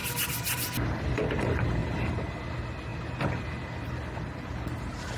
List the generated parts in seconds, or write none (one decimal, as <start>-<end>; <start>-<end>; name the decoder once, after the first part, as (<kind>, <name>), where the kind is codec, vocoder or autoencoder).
none